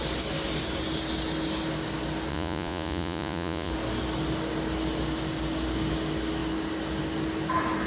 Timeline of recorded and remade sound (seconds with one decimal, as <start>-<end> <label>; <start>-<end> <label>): 0.0-2.3 recorded; 2.3-3.7 remade; 3.7-7.9 recorded